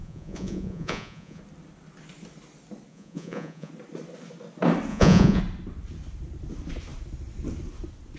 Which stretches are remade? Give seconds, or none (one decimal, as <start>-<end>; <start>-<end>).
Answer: 0.0-1.4; 2.9-3.7; 4.9-5.4